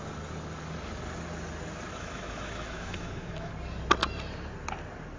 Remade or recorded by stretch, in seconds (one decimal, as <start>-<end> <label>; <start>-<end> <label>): 0.0-1.9 recorded; 1.9-3.5 remade; 3.5-5.2 recorded